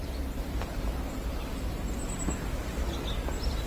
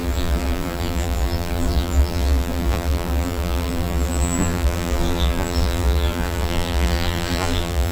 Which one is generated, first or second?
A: second